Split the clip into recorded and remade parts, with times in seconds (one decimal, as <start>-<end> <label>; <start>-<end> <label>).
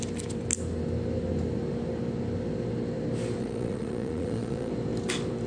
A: 0.0-3.4 recorded; 3.4-4.7 remade; 4.7-5.5 recorded